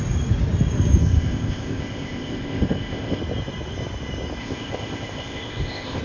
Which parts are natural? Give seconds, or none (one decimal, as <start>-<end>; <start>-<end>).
0.0-1.0; 3.2-4.4